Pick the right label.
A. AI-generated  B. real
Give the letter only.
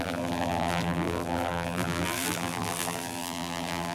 A